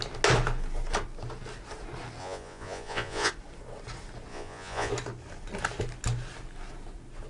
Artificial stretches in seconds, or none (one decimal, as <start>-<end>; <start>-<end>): 2.2-3.3; 4.3-4.9